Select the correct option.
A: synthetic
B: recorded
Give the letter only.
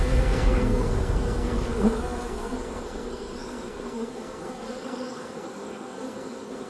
A